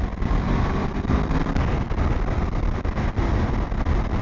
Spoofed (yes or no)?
no